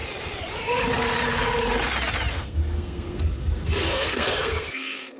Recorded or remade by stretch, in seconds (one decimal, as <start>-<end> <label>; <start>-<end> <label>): 0.0-2.3 recorded; 2.3-5.2 remade